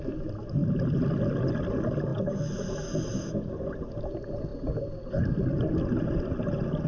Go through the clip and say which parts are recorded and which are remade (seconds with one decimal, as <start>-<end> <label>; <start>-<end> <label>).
0.0-6.9 recorded